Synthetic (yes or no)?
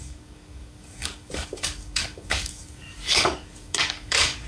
yes